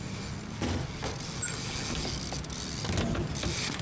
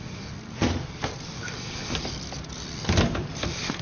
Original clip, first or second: first